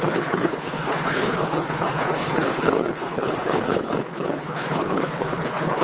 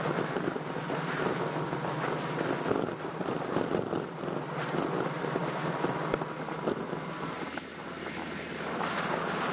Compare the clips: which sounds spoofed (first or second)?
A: first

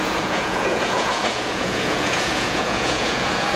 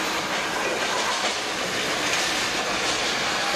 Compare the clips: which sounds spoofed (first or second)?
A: first